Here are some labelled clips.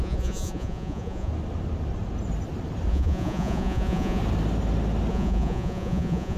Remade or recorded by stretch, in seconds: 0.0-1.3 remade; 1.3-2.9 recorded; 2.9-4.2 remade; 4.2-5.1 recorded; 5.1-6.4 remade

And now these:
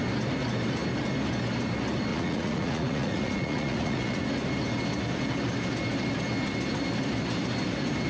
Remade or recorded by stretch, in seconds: 0.0-2.1 recorded; 2.1-4.2 remade; 4.2-8.1 recorded

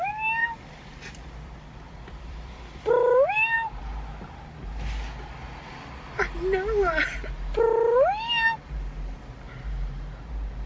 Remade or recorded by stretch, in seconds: 0.0-0.4 recorded; 0.4-3.8 remade; 3.8-10.7 recorded

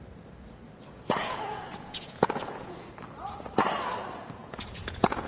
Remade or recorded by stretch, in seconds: 0.0-1.2 recorded; 1.2-2.9 remade; 2.9-4.4 recorded; 4.4-5.3 remade